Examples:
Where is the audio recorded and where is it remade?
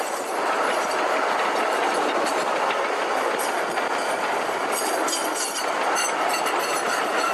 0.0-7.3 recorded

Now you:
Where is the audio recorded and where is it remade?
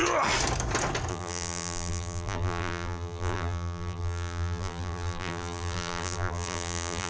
0.0-1.1 recorded; 1.1-7.1 remade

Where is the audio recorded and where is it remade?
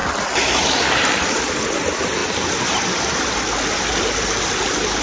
0.0-1.6 remade; 1.6-5.0 recorded